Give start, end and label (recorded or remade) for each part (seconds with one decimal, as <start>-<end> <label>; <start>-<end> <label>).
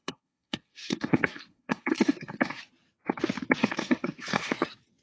0.0-2.6 remade; 2.6-3.6 recorded; 3.6-4.5 remade; 4.5-5.0 recorded